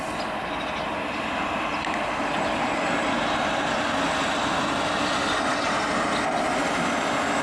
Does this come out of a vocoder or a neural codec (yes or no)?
no